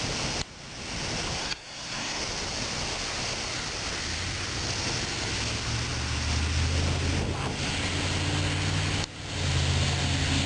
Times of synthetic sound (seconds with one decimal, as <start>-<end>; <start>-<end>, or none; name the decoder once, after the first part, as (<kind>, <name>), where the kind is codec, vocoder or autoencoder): 1.4-2.2 (codec, SNAC)